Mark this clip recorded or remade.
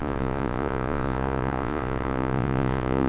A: remade